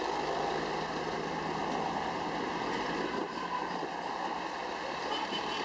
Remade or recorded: recorded